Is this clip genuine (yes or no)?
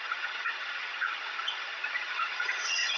no